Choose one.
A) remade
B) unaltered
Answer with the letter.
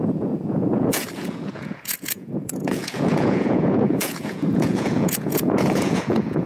A